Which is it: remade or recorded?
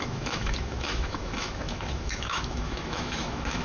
remade